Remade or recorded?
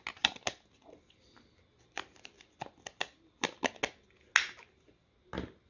recorded